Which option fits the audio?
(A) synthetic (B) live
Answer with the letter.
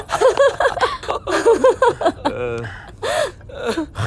B